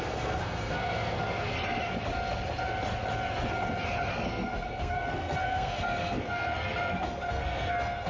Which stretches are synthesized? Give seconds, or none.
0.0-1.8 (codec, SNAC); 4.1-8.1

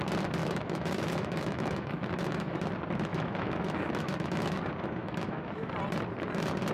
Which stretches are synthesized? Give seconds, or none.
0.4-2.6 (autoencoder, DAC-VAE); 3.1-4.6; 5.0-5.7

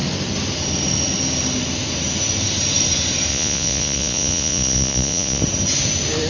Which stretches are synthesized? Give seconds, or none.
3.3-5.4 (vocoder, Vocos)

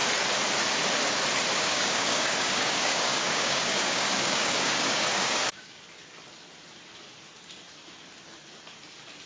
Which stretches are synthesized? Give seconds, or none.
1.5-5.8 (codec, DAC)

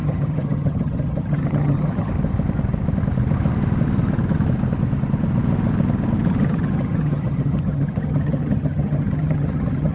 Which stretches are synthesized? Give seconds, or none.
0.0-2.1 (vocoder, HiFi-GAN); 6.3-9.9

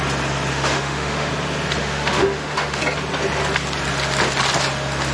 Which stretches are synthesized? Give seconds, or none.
0.5-1.3 (autoencoder, DAC-VAE); 1.8-2.8

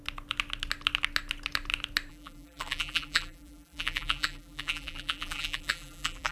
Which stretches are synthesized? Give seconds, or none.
2.1-6.3 (vocoder, BigVGAN v2)